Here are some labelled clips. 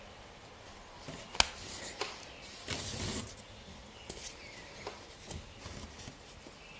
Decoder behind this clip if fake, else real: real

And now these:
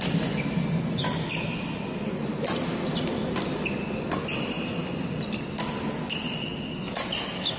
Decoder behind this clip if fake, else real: real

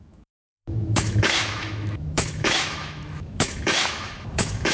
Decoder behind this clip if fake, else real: fake, autoencoder, DAC-VAE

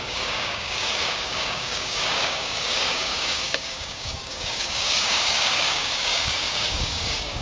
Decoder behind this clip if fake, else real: fake, codec, DAC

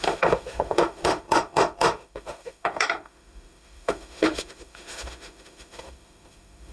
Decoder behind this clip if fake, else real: fake, autoencoder, DAC-VAE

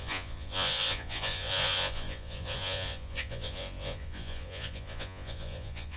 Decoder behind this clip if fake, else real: fake, vocoder, Vocos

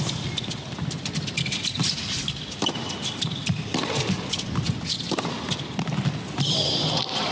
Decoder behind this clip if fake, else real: real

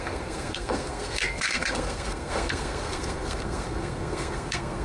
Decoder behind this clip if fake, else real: fake, codec, SNAC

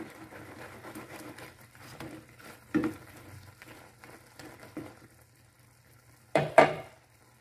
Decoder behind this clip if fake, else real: fake, vocoder, BigVGAN v2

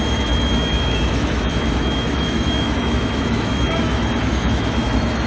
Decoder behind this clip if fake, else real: fake, autoencoder, DAC-VAE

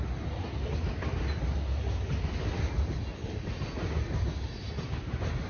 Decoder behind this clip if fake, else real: real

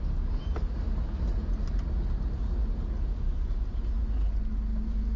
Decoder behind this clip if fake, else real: real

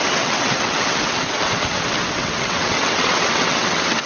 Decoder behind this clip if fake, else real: fake, vocoder, WaveNeXt